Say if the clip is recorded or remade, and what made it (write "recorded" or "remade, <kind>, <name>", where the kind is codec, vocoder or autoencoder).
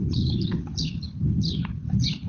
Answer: remade, codec, HILCodec